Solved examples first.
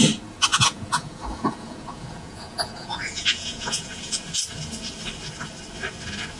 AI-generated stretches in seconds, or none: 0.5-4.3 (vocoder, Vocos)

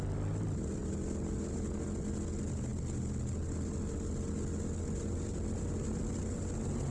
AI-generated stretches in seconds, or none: none

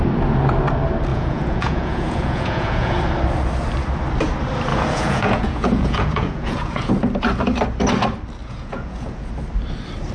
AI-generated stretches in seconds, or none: 1.1-3.0 (vocoder, Vocos); 4.7-6.9; 8.4-9.3

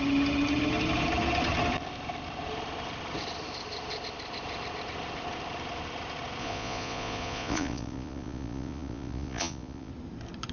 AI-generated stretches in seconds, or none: 6.4-9.9 (vocoder, Vocos)

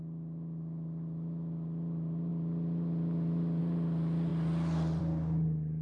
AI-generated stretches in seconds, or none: none

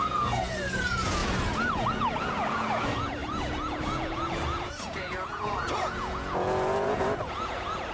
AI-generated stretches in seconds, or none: 0.0-7.9 (vocoder, Vocos)

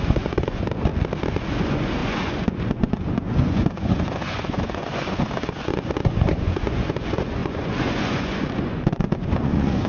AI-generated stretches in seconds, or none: 0.0-0.9 (vocoder, Vocos); 1.5-9.9

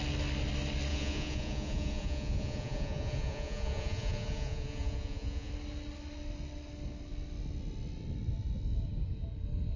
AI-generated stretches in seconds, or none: 0.9-5.5 (vocoder, Vocos)